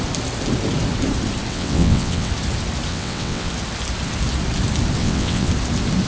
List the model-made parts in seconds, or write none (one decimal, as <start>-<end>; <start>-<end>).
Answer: 1.5-2.3; 2.9-3.5; 5.0-5.5